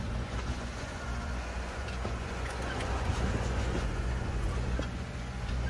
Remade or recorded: remade